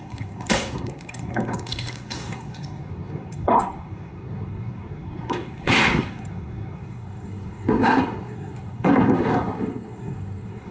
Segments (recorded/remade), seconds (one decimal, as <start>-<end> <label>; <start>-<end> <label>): 0.0-10.7 remade